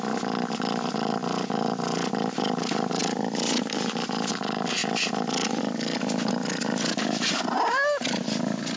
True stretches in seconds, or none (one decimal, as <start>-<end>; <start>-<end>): 0.0-8.8